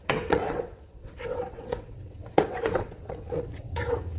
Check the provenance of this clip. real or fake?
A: fake